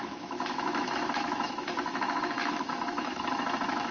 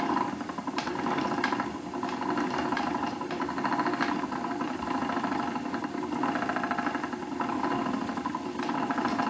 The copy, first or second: first